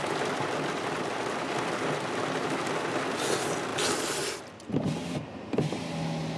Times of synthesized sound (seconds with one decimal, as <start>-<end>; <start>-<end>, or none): none